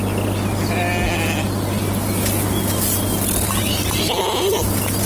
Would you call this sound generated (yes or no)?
no